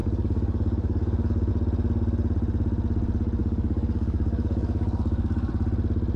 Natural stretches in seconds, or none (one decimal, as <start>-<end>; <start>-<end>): 1.5-3.4; 5.5-6.2